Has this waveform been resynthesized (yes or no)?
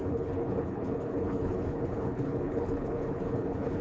yes